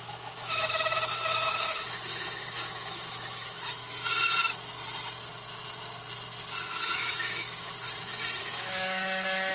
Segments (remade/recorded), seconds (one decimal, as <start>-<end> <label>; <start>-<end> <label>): 0.0-4.1 remade; 4.1-6.7 recorded; 6.7-7.7 remade; 7.7-8.4 recorded; 8.4-9.5 remade